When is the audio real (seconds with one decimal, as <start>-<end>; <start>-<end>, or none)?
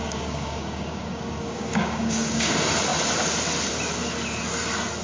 2.5-5.0